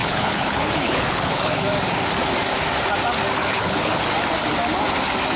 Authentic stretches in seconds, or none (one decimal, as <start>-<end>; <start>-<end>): 1.6-3.4; 4.0-5.4